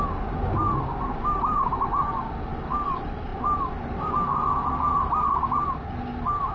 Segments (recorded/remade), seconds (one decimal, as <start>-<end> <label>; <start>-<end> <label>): 0.0-6.5 recorded